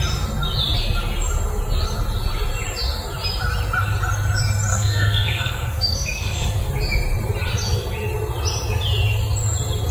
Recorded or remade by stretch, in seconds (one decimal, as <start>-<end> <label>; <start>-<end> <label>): 0.0-4.7 recorded; 4.7-6.7 remade; 6.7-9.9 recorded